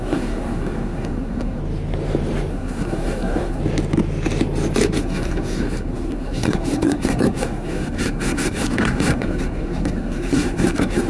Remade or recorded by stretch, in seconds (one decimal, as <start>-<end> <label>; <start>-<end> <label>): 0.0-1.6 remade; 1.6-2.5 recorded; 2.5-3.6 remade; 3.6-5.0 recorded; 5.0-11.1 remade